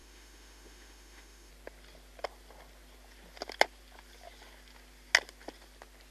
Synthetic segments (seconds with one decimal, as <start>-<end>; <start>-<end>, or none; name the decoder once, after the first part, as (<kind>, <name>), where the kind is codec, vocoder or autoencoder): 0.0-1.5 (autoencoder, DAC-VAE)